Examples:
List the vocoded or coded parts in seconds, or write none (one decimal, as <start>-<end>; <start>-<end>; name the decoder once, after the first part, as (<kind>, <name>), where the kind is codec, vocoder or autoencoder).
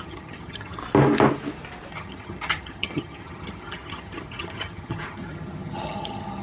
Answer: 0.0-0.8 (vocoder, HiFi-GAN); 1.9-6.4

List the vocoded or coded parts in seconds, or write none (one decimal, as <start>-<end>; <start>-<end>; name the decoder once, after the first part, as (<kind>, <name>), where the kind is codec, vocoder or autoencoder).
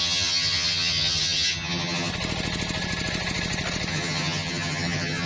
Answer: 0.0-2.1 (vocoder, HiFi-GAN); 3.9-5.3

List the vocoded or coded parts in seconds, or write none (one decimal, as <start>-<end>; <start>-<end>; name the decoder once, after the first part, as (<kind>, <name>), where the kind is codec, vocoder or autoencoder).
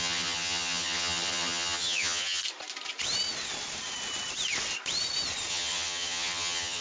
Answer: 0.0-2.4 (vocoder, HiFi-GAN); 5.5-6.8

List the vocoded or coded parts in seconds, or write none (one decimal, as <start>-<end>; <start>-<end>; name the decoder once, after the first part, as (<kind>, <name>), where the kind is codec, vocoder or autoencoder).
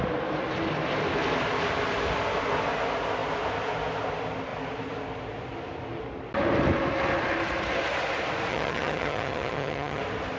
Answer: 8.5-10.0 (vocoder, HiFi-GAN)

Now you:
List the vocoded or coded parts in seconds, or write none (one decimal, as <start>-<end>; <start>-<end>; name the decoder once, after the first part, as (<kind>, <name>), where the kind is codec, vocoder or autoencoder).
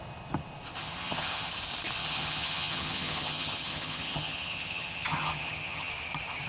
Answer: 0.8-1.5 (vocoder, HiFi-GAN); 2.0-5.9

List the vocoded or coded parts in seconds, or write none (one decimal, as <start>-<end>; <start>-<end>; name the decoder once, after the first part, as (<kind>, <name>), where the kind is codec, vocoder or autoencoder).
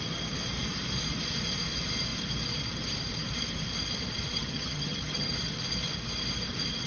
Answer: 4.4-5.3 (vocoder, HiFi-GAN)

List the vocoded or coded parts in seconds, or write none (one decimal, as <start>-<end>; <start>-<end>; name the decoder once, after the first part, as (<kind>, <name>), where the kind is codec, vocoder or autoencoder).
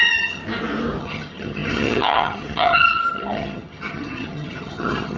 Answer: 0.0-0.4 (vocoder, HiFi-GAN); 1.0-5.2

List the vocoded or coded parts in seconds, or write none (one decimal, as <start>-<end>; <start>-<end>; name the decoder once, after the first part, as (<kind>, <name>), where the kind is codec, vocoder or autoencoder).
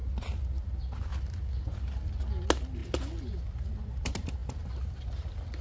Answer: none